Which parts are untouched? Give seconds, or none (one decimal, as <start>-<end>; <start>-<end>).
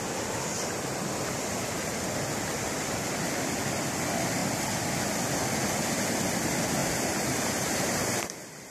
0.0-6.8